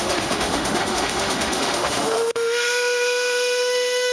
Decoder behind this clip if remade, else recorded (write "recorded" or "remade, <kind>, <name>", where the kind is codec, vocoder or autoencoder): remade, autoencoder, DAC-VAE